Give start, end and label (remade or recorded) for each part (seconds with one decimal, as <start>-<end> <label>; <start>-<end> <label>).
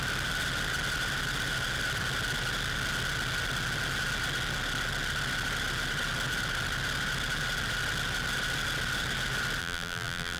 0.0-9.6 recorded; 9.6-10.4 remade